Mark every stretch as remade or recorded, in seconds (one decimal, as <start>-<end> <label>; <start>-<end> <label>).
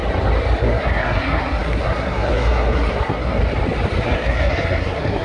0.0-0.6 recorded; 0.6-3.4 remade; 3.4-4.0 recorded; 4.0-5.2 remade